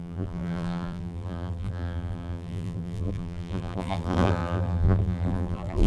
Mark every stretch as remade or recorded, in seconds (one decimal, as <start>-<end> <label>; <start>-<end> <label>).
0.0-5.9 remade